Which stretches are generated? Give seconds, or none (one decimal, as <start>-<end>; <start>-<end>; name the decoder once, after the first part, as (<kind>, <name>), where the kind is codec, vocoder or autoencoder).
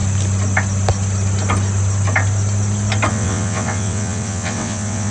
3.1-5.1 (vocoder, WaveNeXt)